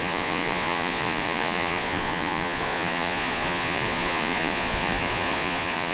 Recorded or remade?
remade